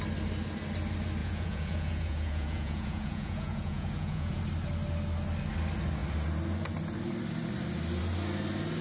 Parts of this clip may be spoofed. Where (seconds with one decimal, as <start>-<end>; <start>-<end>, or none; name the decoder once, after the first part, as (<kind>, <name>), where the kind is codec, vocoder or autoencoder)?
1.2-4.4 (vocoder, Vocos)